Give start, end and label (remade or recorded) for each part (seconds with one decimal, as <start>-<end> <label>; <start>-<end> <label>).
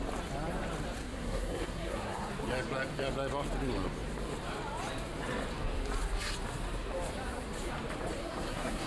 0.0-1.0 recorded; 1.0-2.3 remade; 2.3-8.2 recorded; 8.2-8.9 remade